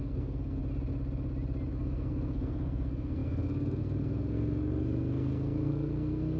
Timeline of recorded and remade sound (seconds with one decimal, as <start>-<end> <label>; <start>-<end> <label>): 0.0-0.6 remade; 0.6-1.7 recorded; 1.7-6.4 remade